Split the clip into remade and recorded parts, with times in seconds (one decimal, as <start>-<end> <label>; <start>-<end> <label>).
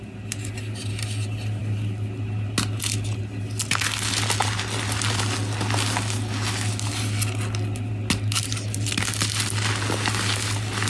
0.0-10.9 recorded